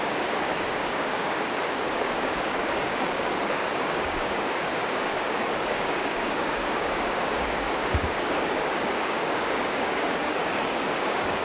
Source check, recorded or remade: remade